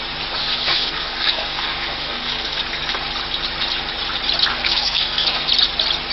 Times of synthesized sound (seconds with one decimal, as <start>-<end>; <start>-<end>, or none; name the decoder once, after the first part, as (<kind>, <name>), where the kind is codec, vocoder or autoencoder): 0.4-2.6 (codec, SNAC); 4.5-5.5